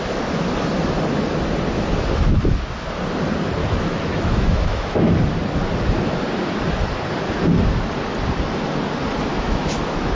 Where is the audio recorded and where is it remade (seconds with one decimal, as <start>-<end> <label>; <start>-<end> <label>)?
0.0-3.6 recorded; 3.6-5.1 remade; 5.1-9.3 recorded; 9.3-10.1 remade